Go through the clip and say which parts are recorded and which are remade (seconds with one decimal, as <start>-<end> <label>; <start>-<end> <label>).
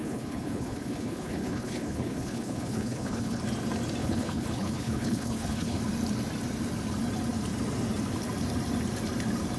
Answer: 0.0-3.4 remade; 3.4-4.0 recorded; 4.0-5.8 remade; 5.8-9.6 recorded